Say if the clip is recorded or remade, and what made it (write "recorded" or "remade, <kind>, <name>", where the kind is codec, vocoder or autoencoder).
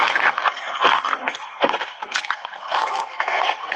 remade, codec, SNAC